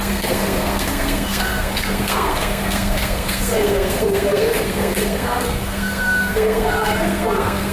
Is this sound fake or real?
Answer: fake